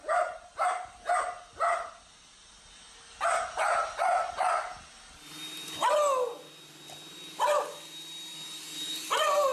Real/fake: real